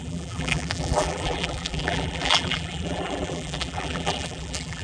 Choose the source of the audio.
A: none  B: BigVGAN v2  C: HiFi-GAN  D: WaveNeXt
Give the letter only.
B